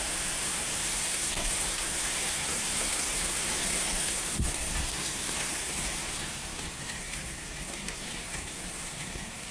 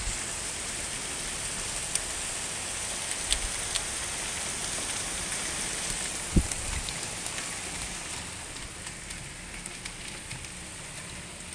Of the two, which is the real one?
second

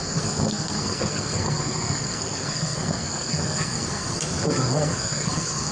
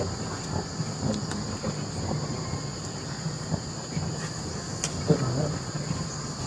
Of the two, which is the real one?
second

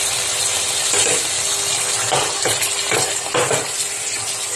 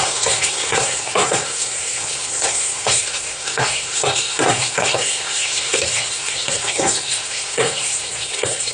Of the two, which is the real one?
first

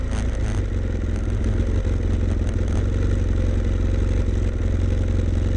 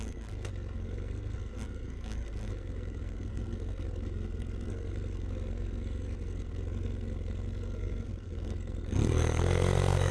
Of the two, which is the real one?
first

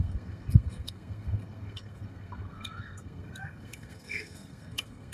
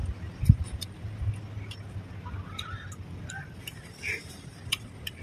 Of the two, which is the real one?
second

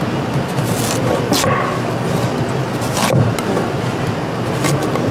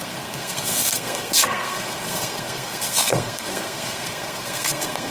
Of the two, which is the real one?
first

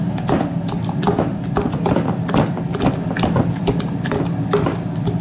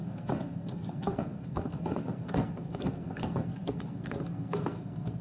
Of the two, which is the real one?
first